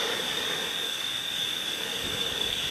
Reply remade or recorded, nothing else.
remade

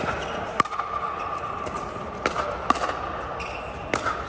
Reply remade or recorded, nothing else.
recorded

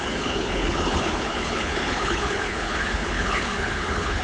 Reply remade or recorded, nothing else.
remade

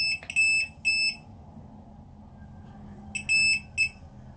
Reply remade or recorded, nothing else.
recorded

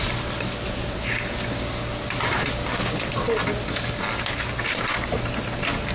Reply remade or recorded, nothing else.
recorded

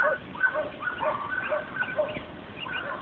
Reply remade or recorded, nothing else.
recorded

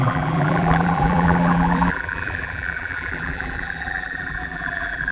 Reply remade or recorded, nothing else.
remade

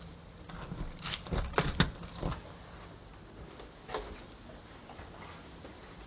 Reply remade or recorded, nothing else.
recorded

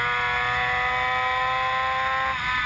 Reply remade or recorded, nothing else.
recorded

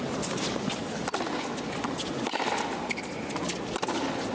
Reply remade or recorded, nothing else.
recorded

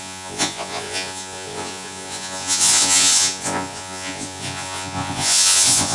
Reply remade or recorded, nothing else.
remade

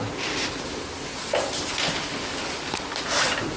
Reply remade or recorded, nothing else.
remade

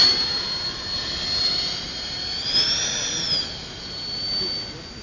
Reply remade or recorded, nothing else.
recorded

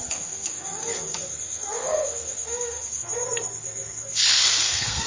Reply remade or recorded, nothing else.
remade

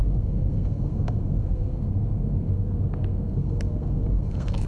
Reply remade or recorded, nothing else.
remade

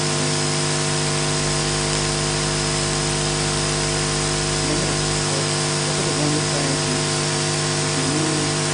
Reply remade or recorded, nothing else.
remade